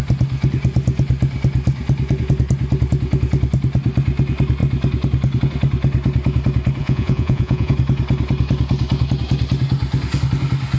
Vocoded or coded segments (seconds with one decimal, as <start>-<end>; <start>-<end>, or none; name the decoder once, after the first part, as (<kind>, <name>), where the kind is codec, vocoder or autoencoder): 6.8-7.7 (vocoder, Vocos)